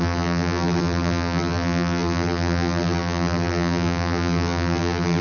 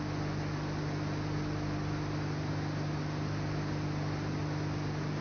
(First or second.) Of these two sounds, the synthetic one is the first